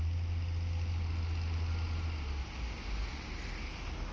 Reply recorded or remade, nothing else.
recorded